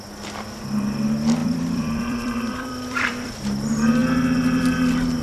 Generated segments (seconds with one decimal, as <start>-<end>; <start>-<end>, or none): 1.4-3.3